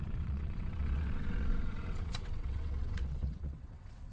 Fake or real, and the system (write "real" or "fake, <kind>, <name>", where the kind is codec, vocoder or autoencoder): fake, vocoder, WaveNeXt